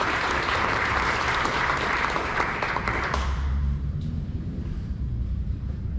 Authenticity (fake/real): fake